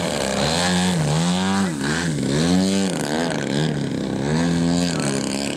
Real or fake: real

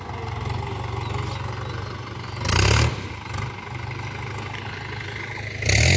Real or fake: real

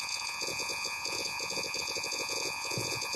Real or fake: fake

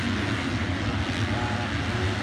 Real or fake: real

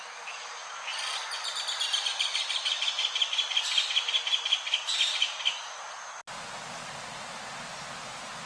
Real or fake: real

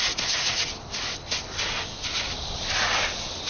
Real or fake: real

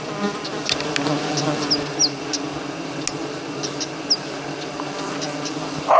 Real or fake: real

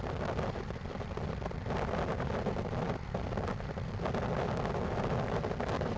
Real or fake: real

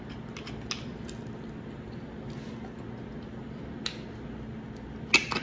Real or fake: real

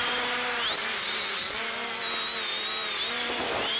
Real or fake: real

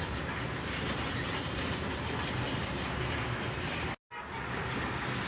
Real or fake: real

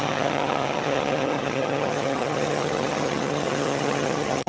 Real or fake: fake